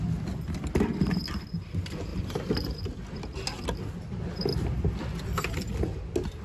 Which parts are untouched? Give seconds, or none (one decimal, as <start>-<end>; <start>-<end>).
0.0-2.1; 2.8-6.4

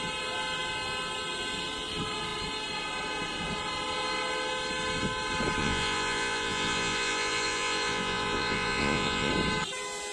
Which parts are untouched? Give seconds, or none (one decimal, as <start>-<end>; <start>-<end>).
0.0-5.6; 9.3-10.1

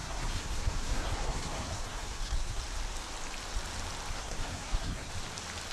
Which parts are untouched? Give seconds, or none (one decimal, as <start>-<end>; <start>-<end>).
2.6-4.1; 5.1-5.7

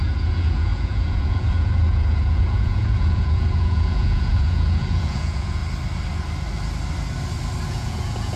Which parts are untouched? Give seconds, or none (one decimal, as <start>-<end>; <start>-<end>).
5.6-7.7